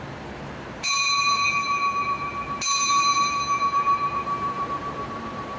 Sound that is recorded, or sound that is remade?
remade